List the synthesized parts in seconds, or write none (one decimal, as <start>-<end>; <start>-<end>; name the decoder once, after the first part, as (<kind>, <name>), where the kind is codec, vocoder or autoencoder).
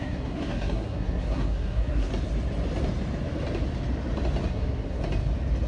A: 0.0-2.1 (codec, SNAC); 4.5-5.0